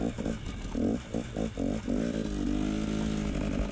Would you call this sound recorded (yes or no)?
yes